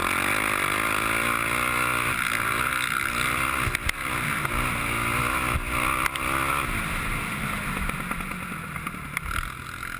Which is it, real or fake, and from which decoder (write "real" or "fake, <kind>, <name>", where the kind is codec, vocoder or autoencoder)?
real